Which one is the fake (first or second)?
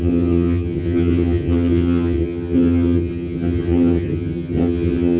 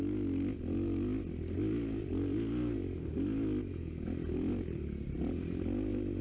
first